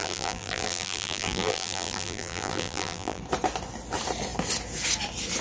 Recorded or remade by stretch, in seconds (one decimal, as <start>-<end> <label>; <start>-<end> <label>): 0.0-3.2 remade; 3.2-5.4 recorded